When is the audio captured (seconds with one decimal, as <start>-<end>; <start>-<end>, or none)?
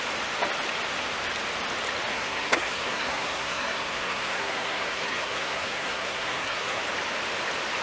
0.0-2.1; 6.8-7.8